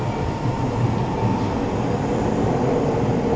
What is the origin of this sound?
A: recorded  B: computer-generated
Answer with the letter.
A